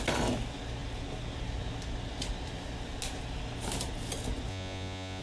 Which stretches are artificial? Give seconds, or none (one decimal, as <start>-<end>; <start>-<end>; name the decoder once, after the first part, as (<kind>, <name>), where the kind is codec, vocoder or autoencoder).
4.5-5.2 (vocoder, Vocos)